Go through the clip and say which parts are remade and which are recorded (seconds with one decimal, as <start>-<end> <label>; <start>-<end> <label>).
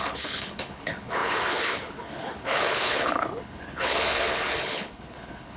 0.0-5.6 remade